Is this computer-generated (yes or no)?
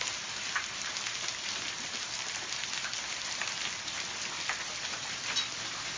no